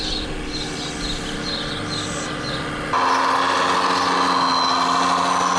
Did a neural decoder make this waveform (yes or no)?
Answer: no